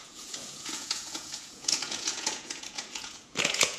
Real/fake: fake